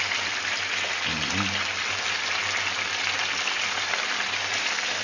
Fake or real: real